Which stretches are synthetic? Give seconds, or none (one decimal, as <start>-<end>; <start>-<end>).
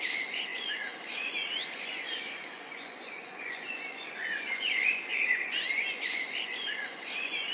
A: 0.0-7.5